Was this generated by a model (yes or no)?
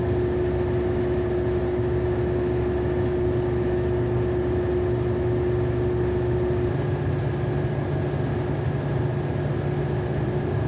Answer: no